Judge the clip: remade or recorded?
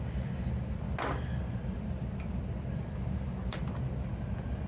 recorded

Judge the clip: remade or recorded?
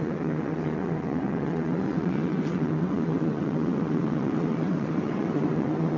remade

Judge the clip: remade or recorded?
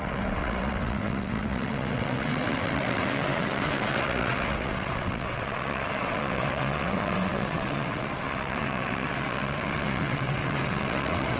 remade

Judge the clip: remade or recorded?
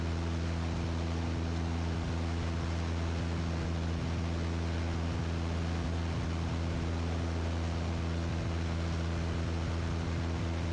recorded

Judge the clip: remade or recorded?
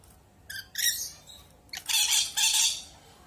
recorded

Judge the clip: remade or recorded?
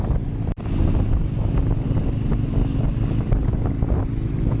recorded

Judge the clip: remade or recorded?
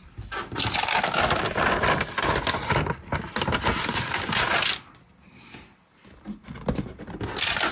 recorded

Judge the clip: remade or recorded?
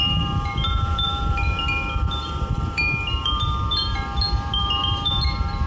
remade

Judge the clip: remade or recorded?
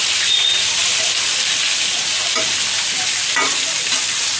recorded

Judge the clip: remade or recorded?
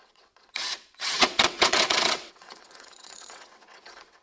remade